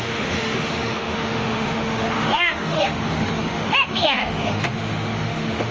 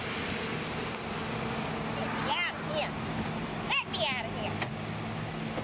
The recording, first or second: second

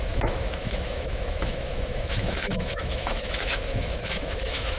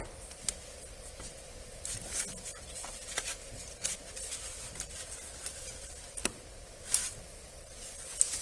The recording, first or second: second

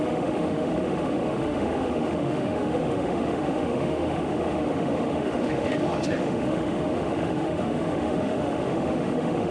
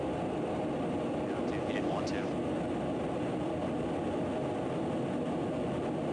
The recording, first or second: second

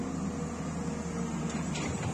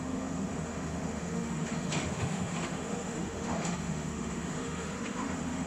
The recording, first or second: first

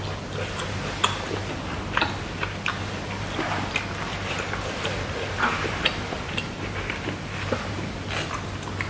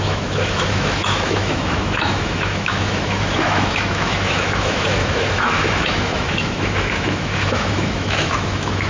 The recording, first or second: first